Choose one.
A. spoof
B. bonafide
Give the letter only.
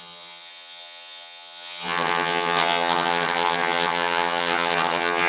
A